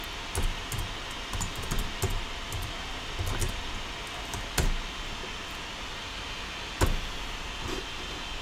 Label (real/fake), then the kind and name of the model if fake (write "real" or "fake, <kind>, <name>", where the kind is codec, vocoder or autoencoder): real